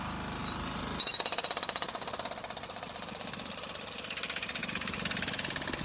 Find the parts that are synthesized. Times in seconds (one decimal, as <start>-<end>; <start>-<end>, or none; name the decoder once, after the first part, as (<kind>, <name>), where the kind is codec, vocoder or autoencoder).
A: 0.4-3.9 (vocoder, BigVGAN v2); 4.6-5.8